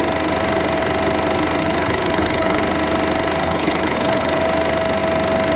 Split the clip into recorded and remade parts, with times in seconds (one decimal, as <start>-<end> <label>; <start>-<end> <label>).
0.0-1.6 recorded; 1.6-2.6 remade; 2.6-3.4 recorded; 3.4-4.4 remade; 4.4-5.6 recorded